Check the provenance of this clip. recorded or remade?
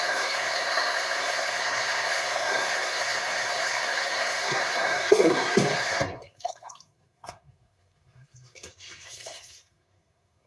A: remade